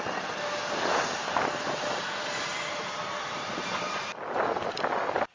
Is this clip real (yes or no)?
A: yes